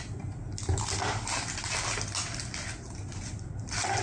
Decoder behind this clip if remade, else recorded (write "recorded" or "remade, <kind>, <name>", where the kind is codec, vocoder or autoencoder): recorded